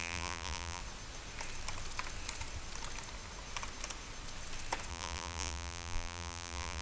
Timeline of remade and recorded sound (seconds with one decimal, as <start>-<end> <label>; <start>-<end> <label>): 0.0-0.8 remade; 0.8-4.9 recorded; 4.9-6.8 remade